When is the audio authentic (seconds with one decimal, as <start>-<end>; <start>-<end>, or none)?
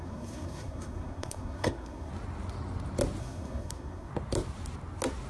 2.1-3.2; 4.1-5.3